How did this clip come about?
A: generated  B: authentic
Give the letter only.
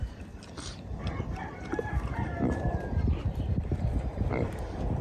B